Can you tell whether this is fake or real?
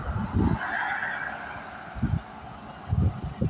real